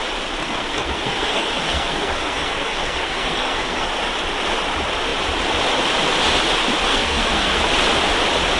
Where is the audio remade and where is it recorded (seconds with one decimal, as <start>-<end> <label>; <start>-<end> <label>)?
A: 0.0-0.4 recorded; 0.4-3.9 remade; 3.9-6.9 recorded; 6.9-7.6 remade; 7.6-8.6 recorded